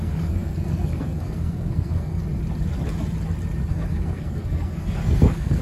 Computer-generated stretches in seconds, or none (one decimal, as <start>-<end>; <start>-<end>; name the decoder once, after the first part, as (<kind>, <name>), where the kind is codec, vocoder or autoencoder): 0.0-2.2 (codec, SNAC); 3.7-5.6